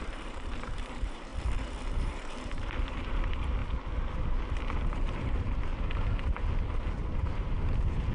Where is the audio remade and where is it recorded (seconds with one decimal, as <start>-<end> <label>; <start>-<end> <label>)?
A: 0.0-1.3 remade; 1.3-1.9 recorded; 1.9-3.6 remade; 3.6-4.7 recorded; 4.7-5.7 remade; 5.7-7.0 recorded; 7.0-8.1 remade

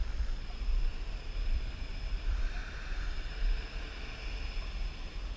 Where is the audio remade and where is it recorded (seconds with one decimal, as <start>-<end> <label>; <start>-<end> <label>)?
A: 0.0-0.9 recorded; 0.9-1.9 remade; 1.9-2.6 recorded; 2.6-3.6 remade; 3.6-5.4 recorded

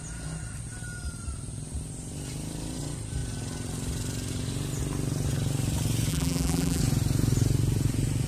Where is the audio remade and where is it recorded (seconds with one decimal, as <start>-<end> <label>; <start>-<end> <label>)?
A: 0.0-6.1 recorded; 6.1-6.8 remade; 6.8-8.3 recorded